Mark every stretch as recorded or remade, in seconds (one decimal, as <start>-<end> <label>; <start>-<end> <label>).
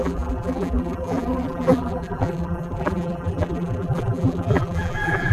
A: 0.0-5.3 remade